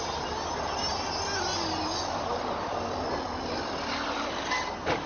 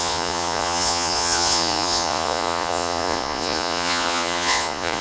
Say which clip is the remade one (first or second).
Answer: second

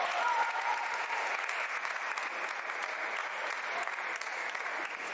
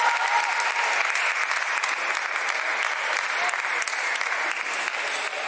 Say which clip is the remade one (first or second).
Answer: first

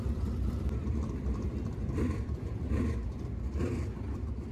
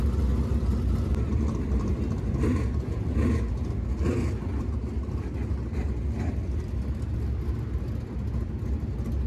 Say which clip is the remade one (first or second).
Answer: first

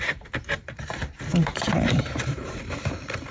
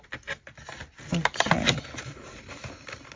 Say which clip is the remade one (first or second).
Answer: first